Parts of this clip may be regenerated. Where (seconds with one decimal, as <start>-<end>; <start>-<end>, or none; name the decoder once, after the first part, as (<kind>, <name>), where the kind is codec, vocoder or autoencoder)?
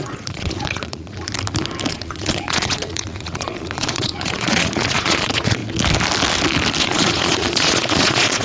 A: 0.0-1.3 (vocoder, Vocos); 1.9-5.6; 6.8-8.4